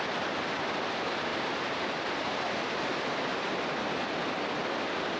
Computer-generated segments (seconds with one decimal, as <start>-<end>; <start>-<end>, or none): 1.3-2.4; 3.3-4.3